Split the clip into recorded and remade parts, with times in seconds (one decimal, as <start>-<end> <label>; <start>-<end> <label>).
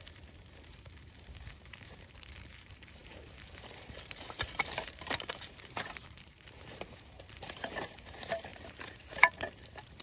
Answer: 0.0-10.0 remade